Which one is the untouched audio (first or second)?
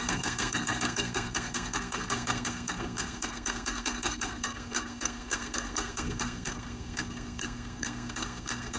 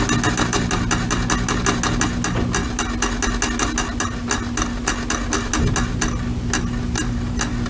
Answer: second